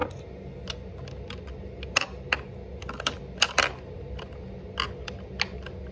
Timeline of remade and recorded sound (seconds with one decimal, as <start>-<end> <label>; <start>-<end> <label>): 0.0-5.9 recorded